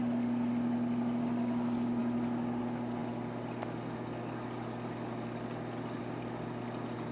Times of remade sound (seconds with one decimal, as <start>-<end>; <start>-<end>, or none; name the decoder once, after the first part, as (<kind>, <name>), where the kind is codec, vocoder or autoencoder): none